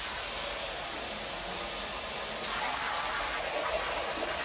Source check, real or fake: real